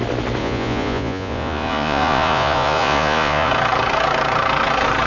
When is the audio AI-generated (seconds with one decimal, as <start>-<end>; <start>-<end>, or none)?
0.4-3.5